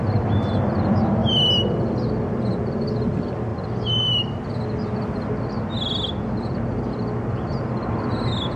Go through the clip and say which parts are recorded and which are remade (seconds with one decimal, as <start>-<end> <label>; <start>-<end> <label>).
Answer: 0.0-8.6 recorded